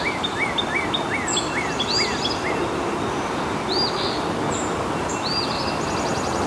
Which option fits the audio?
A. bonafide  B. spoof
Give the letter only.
A